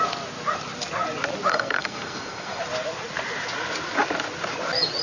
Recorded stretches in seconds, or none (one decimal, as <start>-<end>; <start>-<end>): 0.0-1.5; 2.6-5.0